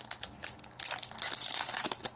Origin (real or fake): real